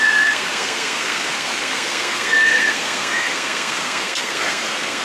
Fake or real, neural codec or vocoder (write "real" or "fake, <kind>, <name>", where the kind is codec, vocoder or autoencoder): fake, codec, SNAC